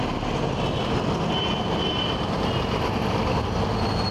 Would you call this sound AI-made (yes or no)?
no